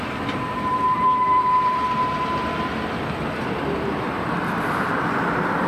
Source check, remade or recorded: remade